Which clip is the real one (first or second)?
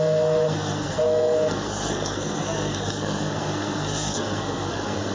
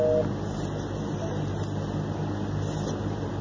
second